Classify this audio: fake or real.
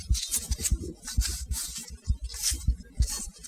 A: real